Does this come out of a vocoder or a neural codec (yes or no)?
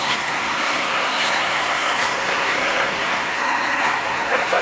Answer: yes